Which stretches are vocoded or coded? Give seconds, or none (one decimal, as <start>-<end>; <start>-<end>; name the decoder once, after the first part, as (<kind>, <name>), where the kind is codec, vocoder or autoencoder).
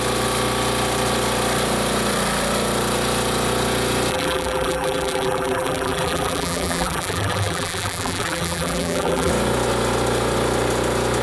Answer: 4.1-9.3 (vocoder, BigVGAN v2)